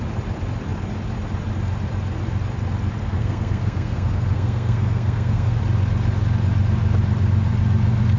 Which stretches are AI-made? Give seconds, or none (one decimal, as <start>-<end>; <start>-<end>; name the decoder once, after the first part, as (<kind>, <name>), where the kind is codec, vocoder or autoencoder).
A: 3.0-5.6 (codec, SNAC)